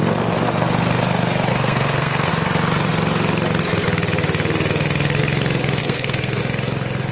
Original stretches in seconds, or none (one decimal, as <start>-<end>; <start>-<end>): 0.0-1.5; 2.3-5.8; 6.4-7.1